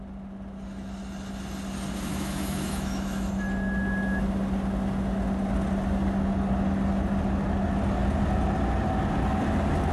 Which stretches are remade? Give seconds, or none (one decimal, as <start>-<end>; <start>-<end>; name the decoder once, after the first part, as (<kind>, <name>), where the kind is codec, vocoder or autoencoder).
2.1-3.3 (autoencoder, DAC-VAE)